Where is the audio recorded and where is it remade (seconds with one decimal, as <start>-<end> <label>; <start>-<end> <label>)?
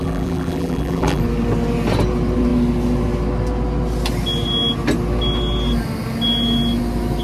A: 0.0-1.2 remade; 1.2-7.2 recorded